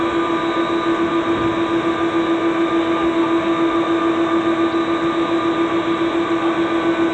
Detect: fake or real real